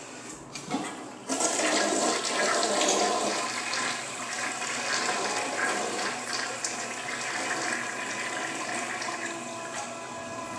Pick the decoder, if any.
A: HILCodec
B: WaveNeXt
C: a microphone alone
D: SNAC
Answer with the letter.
C